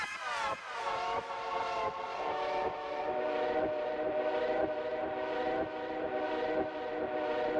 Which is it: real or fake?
fake